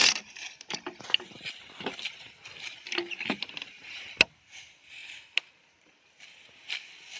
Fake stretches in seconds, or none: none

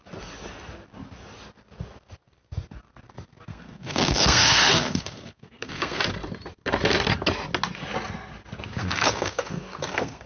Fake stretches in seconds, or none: 3.5-6.0 (codec, SNAC); 8.8-10.3

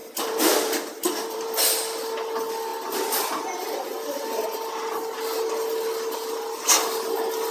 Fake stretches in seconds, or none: 0.0-1.6 (vocoder, BigVGAN v2)

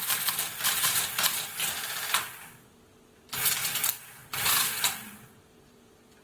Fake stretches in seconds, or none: none